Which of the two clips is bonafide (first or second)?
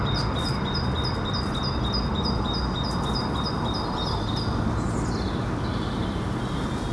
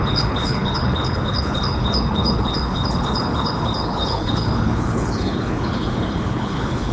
first